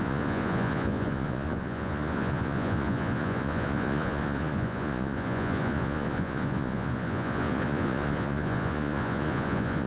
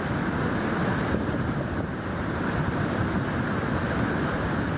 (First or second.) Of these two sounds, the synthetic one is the first